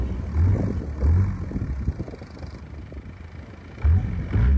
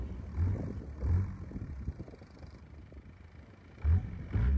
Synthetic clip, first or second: second